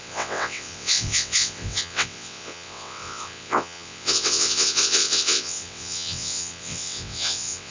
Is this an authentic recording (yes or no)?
no